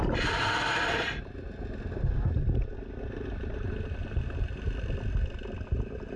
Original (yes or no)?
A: yes